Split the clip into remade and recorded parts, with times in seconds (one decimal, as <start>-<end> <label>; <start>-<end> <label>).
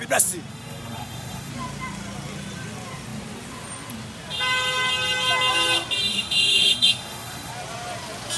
0.0-0.5 recorded; 0.5-1.5 remade; 1.5-6.1 recorded; 6.1-7.5 remade; 7.5-8.4 recorded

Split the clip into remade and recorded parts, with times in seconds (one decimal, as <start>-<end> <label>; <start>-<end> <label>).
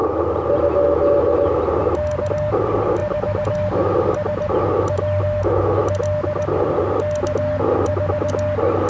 0.0-8.9 recorded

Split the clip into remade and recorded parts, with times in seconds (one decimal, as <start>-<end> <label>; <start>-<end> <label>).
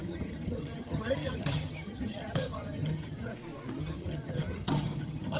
0.0-3.3 remade; 3.3-3.8 recorded; 3.8-5.4 remade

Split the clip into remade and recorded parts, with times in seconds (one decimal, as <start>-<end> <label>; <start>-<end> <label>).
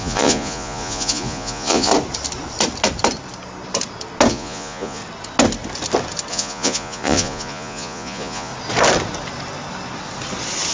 0.0-1.9 remade; 1.9-4.3 recorded; 4.3-5.0 remade; 5.0-6.3 recorded; 6.3-8.5 remade; 8.5-10.7 recorded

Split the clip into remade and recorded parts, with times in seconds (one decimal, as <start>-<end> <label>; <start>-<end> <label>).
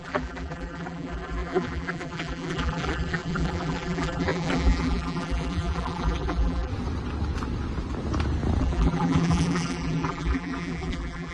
0.0-6.7 remade; 6.7-8.6 recorded; 8.6-11.3 remade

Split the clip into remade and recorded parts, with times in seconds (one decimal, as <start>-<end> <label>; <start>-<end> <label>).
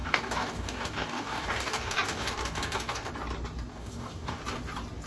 0.0-3.1 remade; 3.1-3.7 recorded; 3.7-4.4 remade; 4.4-5.1 recorded